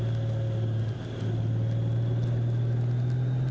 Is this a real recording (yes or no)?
yes